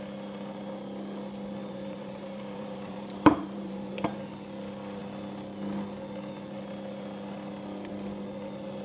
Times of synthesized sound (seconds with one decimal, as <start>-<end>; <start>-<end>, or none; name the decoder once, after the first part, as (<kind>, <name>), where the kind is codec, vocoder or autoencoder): 1.6-4.2 (vocoder, BigVGAN v2)